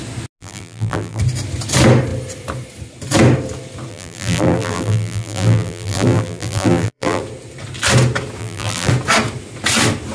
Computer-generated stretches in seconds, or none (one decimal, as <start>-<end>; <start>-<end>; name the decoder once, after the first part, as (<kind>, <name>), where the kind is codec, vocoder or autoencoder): 0.4-1.2 (vocoder, BigVGAN v2); 3.9-7.2; 8.4-8.9